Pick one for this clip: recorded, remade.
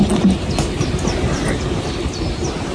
recorded